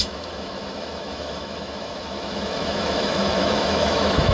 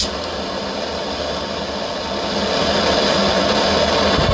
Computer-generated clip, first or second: first